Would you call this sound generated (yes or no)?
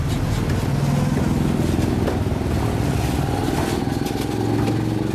no